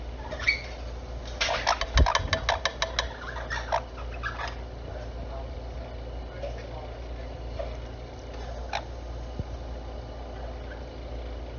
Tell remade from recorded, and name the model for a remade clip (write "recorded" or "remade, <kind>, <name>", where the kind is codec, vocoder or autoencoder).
recorded